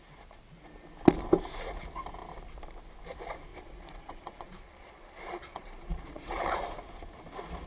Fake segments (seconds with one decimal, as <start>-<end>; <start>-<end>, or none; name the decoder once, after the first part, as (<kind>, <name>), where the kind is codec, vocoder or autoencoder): 3.5-6.6 (vocoder, Vocos)